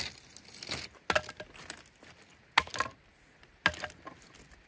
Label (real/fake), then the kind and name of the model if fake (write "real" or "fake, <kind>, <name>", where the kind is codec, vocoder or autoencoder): real